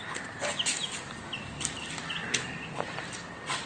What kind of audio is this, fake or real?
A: real